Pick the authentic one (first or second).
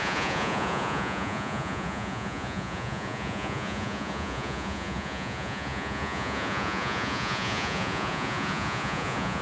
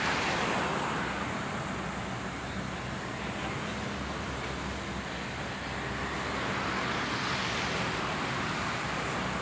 second